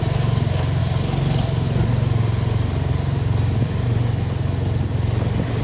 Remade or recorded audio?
recorded